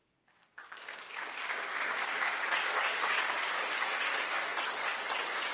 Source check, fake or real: fake